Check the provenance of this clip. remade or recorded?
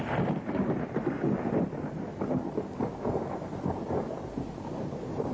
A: recorded